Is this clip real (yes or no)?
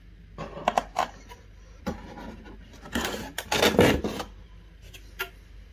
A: yes